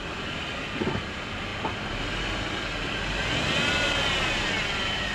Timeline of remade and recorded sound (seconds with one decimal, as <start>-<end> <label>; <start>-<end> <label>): 0.0-5.1 recorded